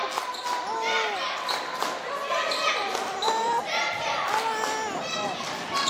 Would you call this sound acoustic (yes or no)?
yes